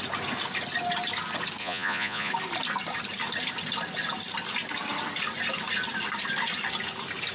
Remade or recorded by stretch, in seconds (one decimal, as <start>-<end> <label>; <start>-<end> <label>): 0.0-1.6 recorded; 1.6-2.3 remade; 2.3-7.3 recorded